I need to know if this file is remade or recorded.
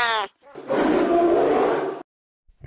recorded